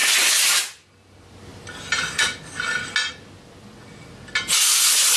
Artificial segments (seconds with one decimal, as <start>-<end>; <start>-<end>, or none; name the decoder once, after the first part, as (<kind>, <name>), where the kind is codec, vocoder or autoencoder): none